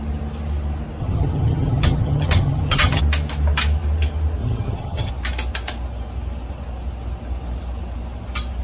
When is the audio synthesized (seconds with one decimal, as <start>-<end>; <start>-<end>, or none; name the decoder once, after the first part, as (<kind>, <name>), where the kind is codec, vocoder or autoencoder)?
1.0-3.0 (vocoder, HiFi-GAN); 4.4-5.1